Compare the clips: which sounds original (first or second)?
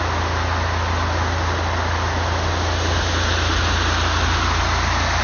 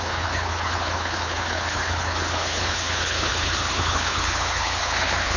first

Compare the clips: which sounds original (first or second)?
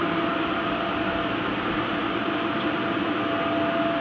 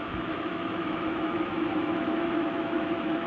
first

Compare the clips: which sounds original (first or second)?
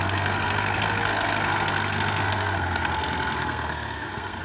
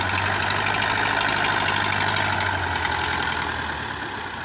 second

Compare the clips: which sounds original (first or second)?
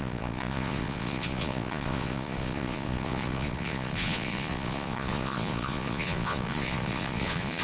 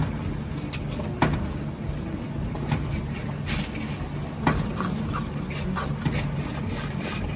second